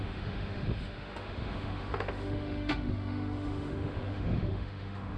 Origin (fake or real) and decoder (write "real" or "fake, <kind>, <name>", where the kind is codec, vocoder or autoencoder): fake, autoencoder, DAC-VAE